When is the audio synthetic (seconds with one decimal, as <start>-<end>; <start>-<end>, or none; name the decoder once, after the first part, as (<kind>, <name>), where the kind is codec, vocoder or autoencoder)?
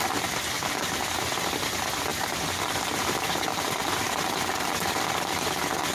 2.1-2.7 (vocoder, BigVGAN v2); 3.8-5.9